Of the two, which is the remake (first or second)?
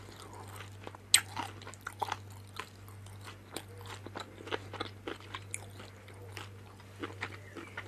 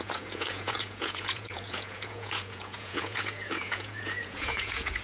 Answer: second